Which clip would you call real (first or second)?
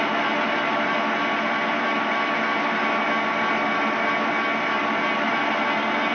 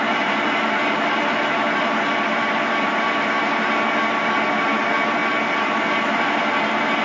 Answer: first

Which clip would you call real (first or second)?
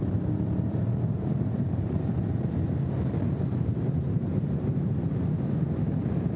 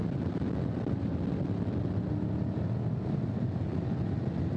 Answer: second